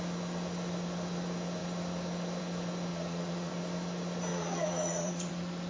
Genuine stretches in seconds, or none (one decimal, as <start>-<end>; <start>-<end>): 0.0-2.9; 3.5-4.3; 5.3-5.7